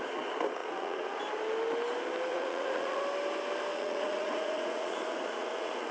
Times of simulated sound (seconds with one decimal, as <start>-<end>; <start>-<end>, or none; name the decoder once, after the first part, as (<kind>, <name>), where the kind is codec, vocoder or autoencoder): 0.6-1.2 (vocoder, Vocos); 2.3-3.0; 3.7-5.9